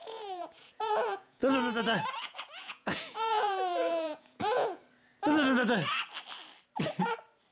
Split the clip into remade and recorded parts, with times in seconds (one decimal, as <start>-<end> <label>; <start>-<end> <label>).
0.0-1.4 remade; 1.4-2.1 recorded; 2.1-4.8 remade; 4.8-7.5 recorded